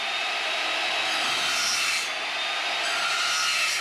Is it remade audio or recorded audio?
recorded